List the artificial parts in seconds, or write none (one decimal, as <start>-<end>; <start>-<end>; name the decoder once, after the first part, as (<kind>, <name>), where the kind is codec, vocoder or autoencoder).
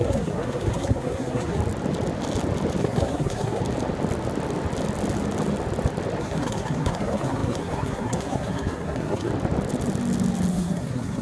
0.0-1.6 (codec, SNAC); 2.8-3.6; 6.2-9.3; 10.5-11.2